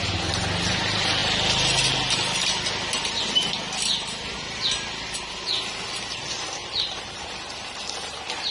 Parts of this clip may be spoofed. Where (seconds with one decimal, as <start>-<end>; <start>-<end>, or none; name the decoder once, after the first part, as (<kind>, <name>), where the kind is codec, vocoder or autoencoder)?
6.6-7.2 (vocoder, BigVGAN v2)